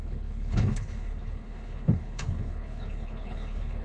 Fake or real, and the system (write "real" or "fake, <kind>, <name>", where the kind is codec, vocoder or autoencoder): fake, codec, HILCodec